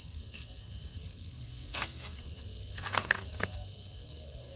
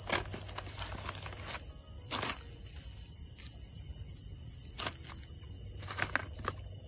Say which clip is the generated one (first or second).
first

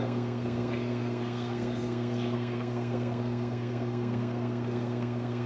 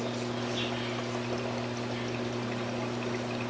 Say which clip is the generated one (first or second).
first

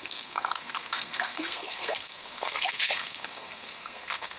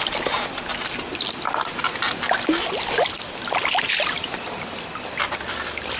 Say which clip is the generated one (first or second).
first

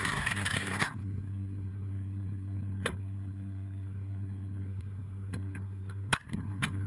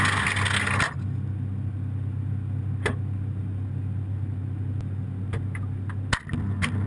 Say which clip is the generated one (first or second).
first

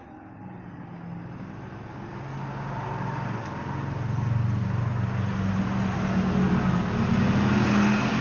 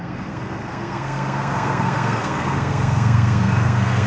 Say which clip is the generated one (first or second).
second